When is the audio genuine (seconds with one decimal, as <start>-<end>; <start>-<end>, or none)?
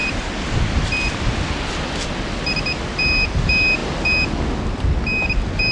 0.0-5.7